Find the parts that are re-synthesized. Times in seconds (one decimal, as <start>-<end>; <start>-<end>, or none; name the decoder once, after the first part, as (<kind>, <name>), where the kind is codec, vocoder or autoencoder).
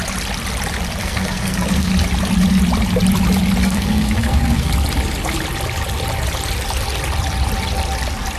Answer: 1.0-1.9 (codec, SNAC); 3.6-4.7